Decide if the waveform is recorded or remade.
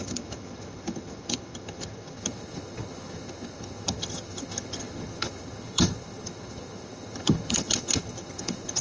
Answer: remade